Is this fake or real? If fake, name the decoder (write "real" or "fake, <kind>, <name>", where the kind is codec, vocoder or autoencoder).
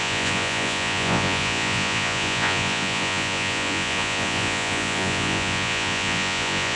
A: fake, vocoder, Vocos